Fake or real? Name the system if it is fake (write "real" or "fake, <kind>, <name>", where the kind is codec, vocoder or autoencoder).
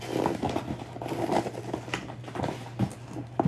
real